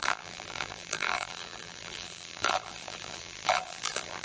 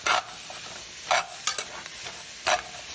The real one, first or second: second